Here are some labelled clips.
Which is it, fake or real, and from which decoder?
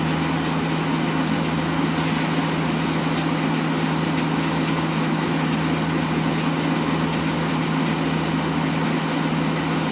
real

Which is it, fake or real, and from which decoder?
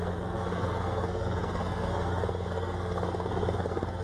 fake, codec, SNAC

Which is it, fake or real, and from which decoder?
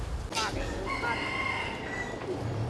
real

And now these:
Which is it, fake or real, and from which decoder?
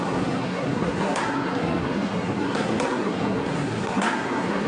fake, codec, SNAC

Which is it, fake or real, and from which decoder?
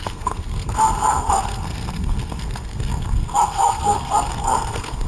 fake, codec, SNAC